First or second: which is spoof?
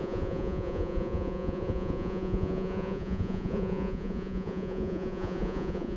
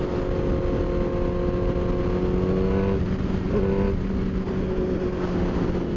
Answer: first